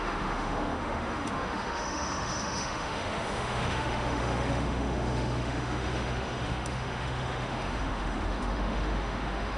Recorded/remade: remade